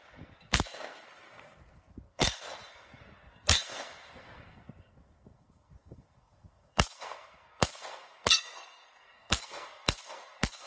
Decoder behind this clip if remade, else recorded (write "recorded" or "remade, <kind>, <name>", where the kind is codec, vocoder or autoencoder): remade, codec, SNAC